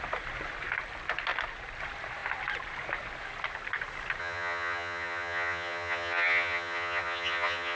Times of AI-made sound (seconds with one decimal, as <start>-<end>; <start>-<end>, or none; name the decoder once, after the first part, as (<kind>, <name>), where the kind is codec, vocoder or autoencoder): 4.2-7.8 (vocoder, HiFi-GAN)